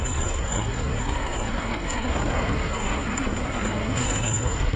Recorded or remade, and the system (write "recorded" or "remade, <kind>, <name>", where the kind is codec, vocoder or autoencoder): remade, codec, SNAC